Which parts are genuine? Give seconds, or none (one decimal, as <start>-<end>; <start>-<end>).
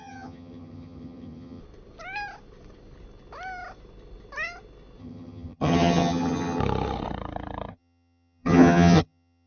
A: 1.6-5.0; 6.6-7.7